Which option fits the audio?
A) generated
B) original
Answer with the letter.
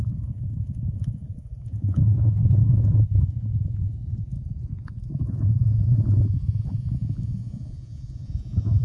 A